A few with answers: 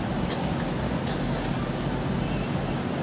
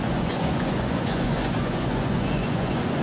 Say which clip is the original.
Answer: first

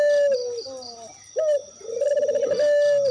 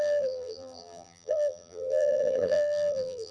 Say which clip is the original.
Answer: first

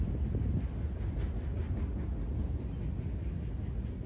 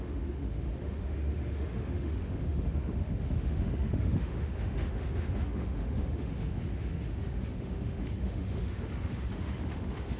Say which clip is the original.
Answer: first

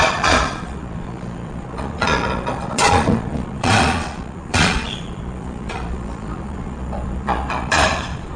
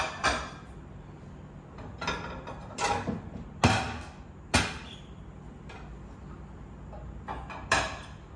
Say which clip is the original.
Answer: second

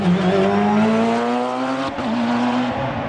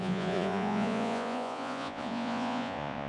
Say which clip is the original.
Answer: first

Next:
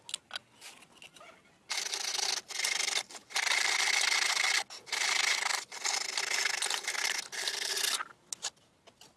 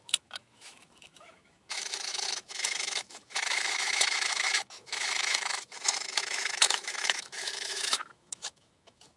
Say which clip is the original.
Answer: first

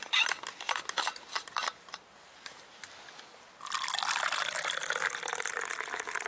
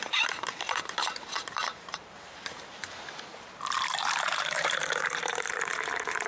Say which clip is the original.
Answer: first